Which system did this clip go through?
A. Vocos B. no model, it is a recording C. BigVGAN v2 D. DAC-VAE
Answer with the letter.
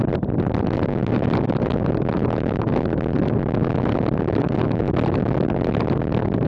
B